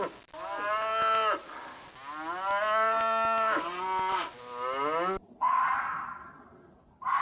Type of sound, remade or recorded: recorded